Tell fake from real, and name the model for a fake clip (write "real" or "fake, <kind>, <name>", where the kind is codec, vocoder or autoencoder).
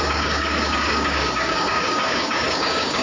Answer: fake, codec, DAC